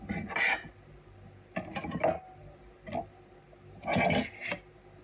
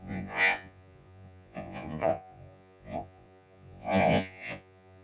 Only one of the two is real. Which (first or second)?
first